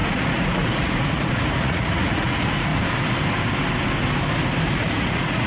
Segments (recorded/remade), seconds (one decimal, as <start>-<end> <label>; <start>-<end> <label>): 0.0-2.7 remade; 2.7-4.7 recorded; 4.7-5.5 remade